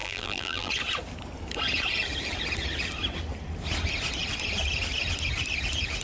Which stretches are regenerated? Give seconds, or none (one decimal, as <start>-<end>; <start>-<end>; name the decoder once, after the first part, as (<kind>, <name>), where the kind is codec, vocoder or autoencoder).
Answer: 0.0-0.7 (vocoder, BigVGAN v2)